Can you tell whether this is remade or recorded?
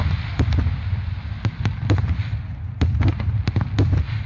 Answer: recorded